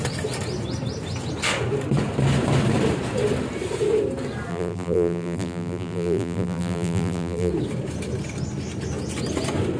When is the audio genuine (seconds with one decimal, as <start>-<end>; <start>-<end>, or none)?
0.0-4.5; 7.5-9.8